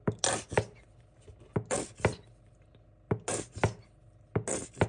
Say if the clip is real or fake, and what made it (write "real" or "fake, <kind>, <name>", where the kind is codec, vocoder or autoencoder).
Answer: real